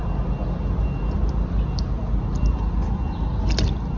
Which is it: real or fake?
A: real